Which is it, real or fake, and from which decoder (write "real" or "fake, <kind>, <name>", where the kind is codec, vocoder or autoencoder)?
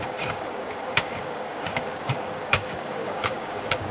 fake, codec, DAC